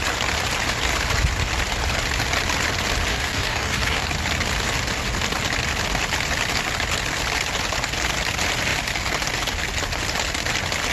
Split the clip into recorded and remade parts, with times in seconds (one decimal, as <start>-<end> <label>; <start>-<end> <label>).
0.0-3.1 recorded; 3.1-4.1 remade; 4.1-10.9 recorded

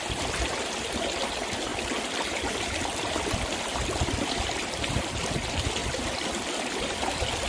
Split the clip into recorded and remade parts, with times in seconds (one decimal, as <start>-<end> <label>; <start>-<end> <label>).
0.0-7.5 recorded

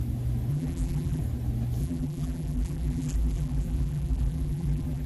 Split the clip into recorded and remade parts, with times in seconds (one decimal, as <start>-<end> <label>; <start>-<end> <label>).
0.0-0.5 recorded; 0.5-1.2 remade; 1.2-1.8 recorded; 1.8-5.1 remade

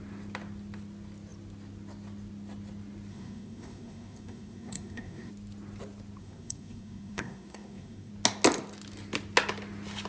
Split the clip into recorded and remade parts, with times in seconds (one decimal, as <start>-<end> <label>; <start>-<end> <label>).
0.0-3.1 recorded; 3.1-5.3 remade; 5.3-6.2 recorded; 6.2-8.1 remade; 8.1-10.1 recorded

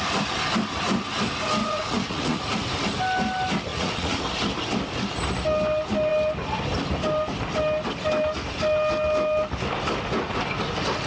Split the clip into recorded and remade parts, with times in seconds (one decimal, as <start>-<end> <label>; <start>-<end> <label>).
0.0-1.6 recorded; 1.6-2.4 remade; 2.4-3.7 recorded; 3.7-4.2 remade; 4.2-11.1 recorded